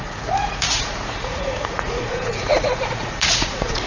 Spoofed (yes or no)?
yes